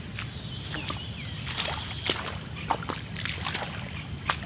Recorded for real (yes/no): yes